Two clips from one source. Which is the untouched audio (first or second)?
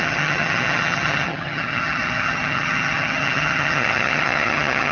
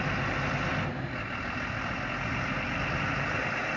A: second